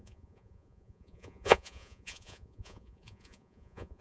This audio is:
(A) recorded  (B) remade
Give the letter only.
B